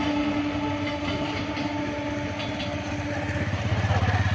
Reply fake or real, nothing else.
real